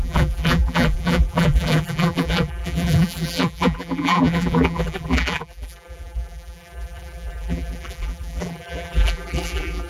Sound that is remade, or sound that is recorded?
remade